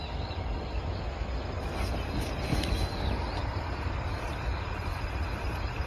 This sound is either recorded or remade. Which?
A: recorded